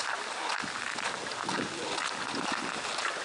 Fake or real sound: real